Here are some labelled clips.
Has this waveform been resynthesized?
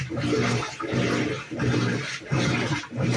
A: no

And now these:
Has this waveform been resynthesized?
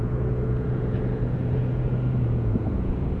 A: yes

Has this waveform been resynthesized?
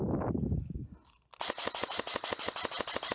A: no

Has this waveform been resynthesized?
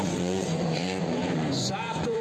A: yes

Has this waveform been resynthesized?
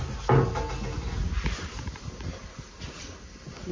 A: no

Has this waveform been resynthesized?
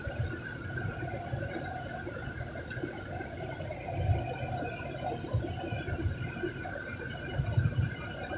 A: no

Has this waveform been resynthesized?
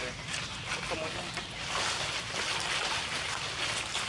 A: no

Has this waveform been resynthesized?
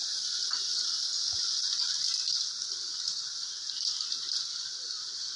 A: no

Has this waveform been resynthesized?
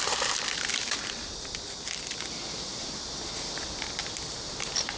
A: no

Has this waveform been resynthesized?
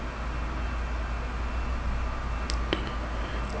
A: no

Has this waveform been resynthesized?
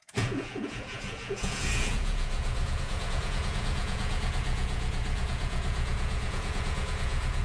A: yes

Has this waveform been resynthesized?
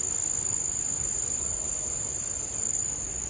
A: no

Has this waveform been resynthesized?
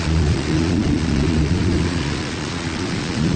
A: yes